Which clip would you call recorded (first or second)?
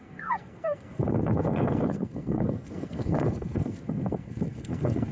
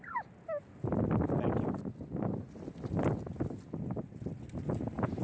second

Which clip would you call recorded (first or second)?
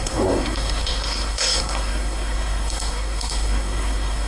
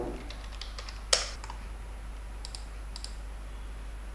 second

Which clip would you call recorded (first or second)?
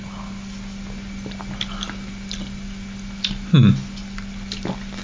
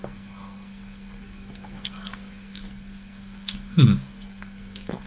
first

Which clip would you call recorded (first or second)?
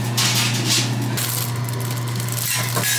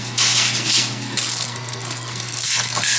first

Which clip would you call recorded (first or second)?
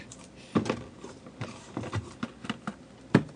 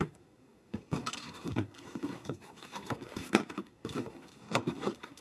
first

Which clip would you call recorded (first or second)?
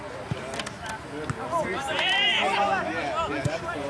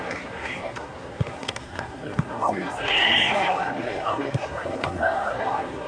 first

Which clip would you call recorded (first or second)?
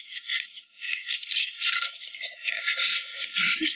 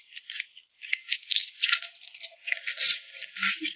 second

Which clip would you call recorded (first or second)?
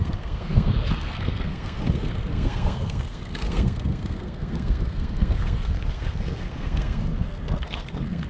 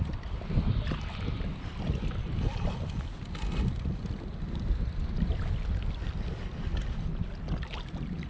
second